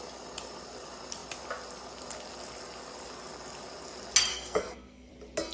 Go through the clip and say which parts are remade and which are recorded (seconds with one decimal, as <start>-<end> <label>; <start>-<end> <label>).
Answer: 0.0-4.3 recorded; 4.3-5.1 remade; 5.1-5.5 recorded